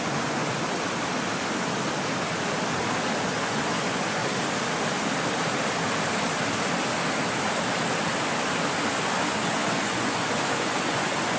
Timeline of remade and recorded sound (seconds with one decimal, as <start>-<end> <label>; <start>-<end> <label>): 0.0-0.4 remade; 0.4-3.2 recorded; 3.2-4.2 remade; 4.2-9.0 recorded; 9.0-11.4 remade